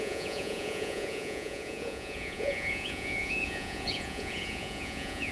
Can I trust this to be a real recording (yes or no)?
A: no